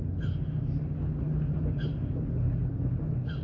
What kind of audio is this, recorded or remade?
recorded